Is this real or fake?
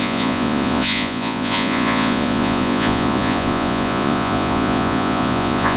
fake